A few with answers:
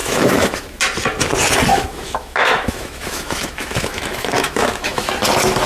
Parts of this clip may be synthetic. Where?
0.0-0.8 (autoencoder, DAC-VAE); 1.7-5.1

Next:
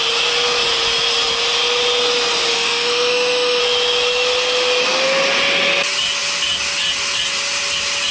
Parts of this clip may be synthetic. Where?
2.5-3.6 (autoencoder, DAC-VAE)

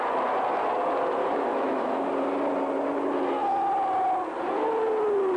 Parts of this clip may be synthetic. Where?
1.2-2.1 (autoencoder, DAC-VAE)